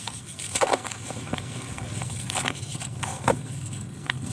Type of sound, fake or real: fake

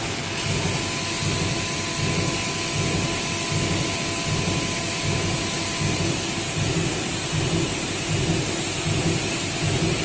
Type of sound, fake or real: real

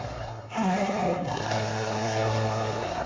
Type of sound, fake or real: fake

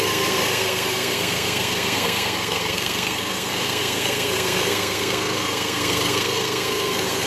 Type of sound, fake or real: fake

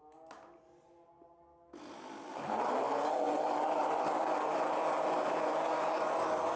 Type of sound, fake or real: real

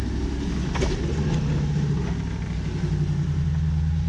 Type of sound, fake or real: real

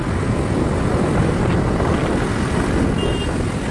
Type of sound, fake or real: real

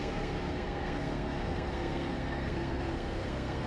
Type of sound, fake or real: fake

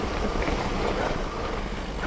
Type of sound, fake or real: real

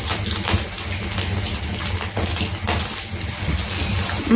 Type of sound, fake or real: real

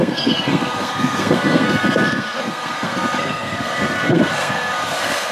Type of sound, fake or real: fake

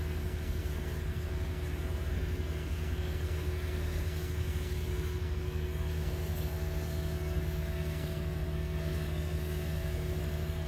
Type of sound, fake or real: fake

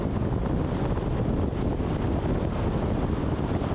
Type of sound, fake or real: real